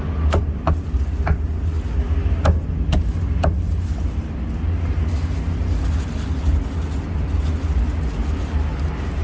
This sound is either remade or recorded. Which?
recorded